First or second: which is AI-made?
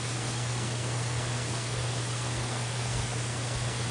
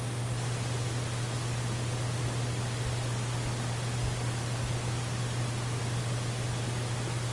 first